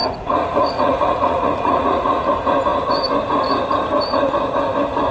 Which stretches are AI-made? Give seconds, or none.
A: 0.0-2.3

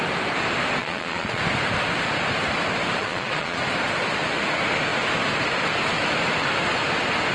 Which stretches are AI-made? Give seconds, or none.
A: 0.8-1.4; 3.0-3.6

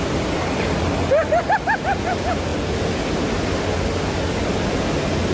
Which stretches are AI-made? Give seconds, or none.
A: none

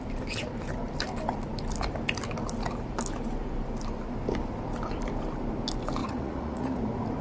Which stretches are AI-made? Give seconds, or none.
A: 6.0-6.8